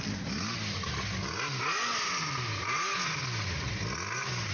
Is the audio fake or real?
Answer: real